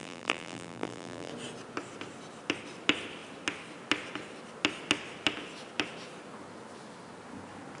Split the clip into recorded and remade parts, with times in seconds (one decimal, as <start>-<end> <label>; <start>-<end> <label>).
0.0-1.3 remade; 1.3-7.8 recorded